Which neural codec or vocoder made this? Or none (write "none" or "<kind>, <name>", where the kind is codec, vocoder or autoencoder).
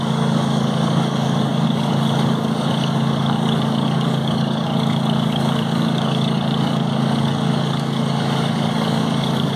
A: codec, DAC